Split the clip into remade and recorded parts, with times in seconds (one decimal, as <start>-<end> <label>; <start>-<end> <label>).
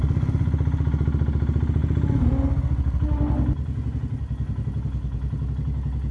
0.0-6.1 recorded